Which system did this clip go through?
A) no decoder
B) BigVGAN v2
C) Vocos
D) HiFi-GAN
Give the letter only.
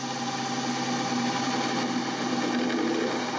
A